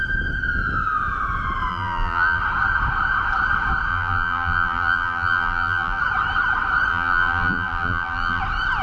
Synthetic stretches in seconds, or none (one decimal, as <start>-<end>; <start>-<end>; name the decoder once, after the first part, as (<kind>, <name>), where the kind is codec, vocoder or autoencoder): 1.7-2.4 (vocoder, BigVGAN v2); 3.9-6.0; 6.9-8.4

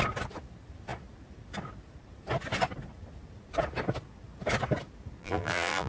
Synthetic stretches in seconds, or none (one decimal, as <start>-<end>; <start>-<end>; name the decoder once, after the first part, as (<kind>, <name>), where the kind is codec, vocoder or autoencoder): 5.2-5.9 (vocoder, BigVGAN v2)

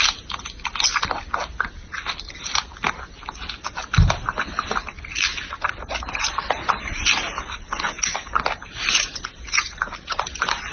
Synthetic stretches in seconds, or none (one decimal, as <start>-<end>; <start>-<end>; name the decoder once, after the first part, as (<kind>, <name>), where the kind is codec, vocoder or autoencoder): none